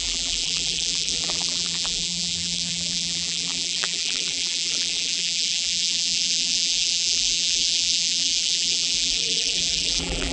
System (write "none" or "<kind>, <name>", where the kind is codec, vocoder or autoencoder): vocoder, BigVGAN v2